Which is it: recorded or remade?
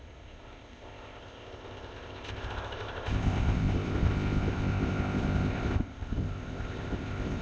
remade